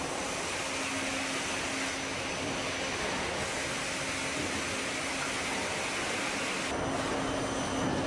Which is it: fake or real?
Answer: real